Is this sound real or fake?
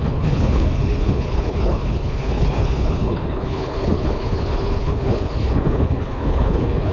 fake